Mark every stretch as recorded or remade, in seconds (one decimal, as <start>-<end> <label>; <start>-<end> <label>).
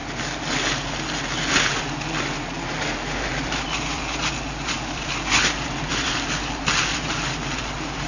0.0-3.3 recorded; 3.3-7.6 remade; 7.6-8.1 recorded